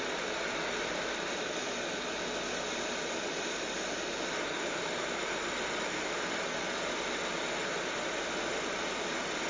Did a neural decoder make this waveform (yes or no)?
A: no